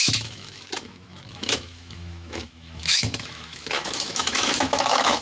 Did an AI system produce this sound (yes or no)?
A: yes